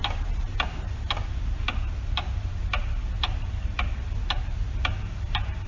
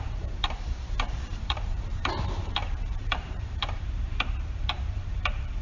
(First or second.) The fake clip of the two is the second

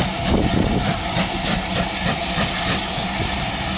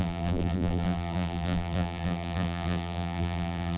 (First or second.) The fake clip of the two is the second